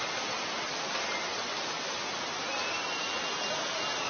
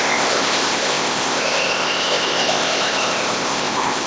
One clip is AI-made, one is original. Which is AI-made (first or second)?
second